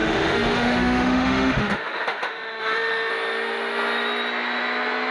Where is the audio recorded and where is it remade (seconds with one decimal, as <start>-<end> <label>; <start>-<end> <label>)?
0.0-3.1 remade; 3.1-5.1 recorded